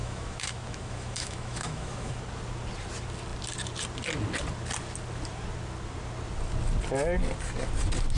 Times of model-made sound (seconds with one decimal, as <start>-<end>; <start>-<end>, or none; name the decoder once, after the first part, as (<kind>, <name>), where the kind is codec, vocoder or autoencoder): 0.0-2.2 (autoencoder, DAC-VAE)